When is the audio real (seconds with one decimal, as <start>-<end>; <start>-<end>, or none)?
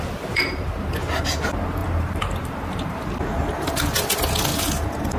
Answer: 0.0-1.8; 3.7-5.2